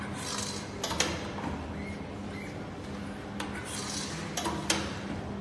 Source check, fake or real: real